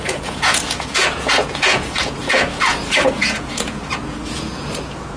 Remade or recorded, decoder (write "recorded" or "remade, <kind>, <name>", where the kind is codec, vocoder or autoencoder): remade, vocoder, Vocos